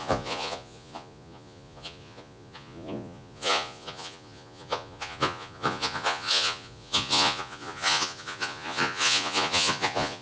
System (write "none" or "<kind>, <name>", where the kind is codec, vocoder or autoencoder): vocoder, Vocos